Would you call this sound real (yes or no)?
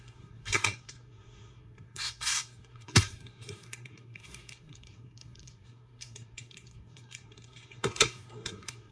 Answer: no